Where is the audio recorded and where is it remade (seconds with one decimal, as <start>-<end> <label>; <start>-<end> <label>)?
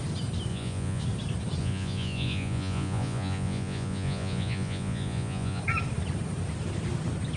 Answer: 0.0-0.5 recorded; 0.5-1.0 remade; 1.0-1.6 recorded; 1.6-5.6 remade; 5.6-7.4 recorded